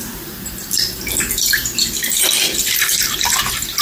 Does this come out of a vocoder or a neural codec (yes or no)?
no